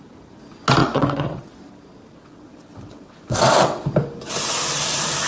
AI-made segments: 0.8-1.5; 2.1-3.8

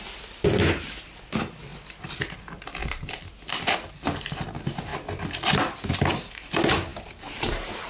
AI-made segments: none